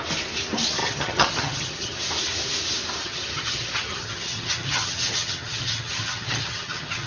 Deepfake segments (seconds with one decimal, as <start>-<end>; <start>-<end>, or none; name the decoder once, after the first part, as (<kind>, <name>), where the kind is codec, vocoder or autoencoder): 0.8-2.0 (vocoder, HiFi-GAN); 3.0-7.1